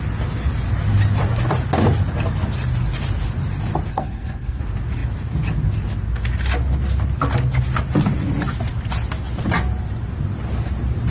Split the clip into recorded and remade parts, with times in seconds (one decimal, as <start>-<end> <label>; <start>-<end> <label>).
0.0-3.9 recorded; 3.9-4.6 remade; 4.6-11.1 recorded